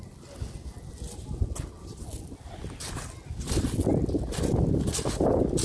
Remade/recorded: recorded